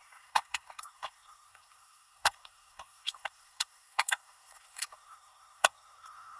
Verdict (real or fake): fake